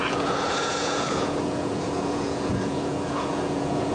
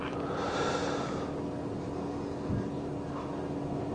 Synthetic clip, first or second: first